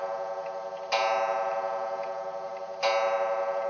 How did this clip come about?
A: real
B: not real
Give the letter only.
A